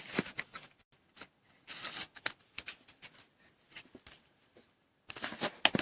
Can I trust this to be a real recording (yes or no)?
yes